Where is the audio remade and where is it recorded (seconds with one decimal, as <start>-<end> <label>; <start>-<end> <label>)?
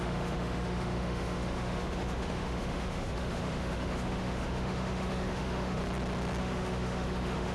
0.0-5.8 remade; 5.8-6.4 recorded; 6.4-7.5 remade